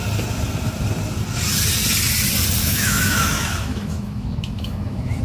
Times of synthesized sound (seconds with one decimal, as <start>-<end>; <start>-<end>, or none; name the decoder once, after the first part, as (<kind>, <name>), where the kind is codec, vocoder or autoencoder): 2.6-5.2 (autoencoder, DAC-VAE)